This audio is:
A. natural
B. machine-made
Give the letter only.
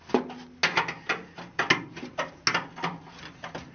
A